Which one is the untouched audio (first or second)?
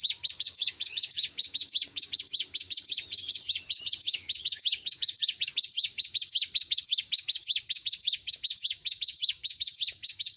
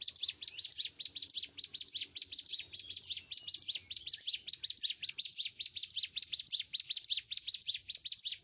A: second